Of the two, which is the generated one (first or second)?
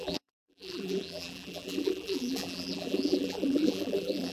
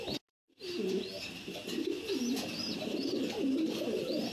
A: first